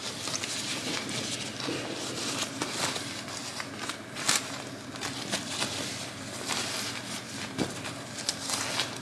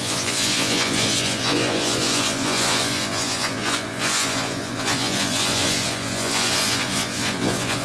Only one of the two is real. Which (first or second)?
first